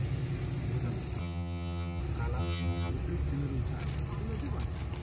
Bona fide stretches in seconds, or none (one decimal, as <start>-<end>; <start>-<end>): 0.0-1.2; 2.0-2.4; 2.9-5.0